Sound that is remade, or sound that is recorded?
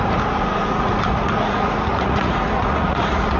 remade